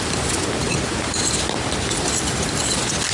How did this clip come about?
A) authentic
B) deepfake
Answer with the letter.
A